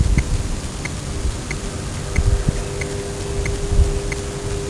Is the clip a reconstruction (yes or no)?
no